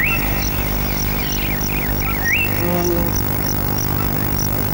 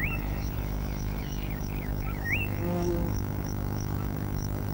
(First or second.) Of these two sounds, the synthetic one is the second